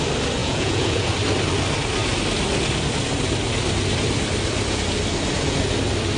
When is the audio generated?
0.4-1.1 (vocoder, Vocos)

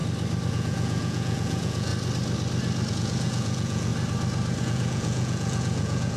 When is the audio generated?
0.5-1.9 (vocoder, Vocos); 2.9-3.9; 4.6-6.2

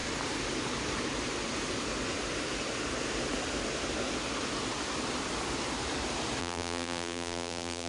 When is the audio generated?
6.4-7.9 (vocoder, BigVGAN v2)